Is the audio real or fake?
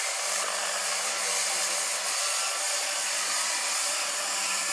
fake